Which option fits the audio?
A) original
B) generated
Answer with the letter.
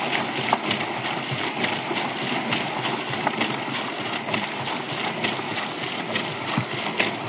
A